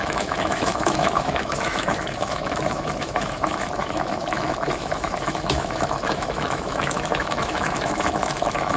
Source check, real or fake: fake